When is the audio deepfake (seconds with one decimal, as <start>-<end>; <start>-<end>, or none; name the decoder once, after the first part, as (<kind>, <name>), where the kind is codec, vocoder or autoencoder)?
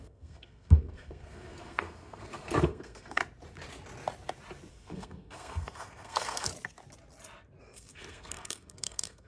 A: 0.0-3.2 (codec, SNAC); 4.7-6.5; 7.6-9.3